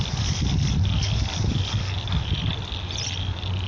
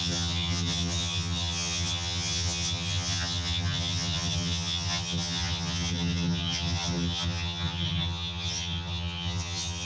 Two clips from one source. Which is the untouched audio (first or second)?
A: first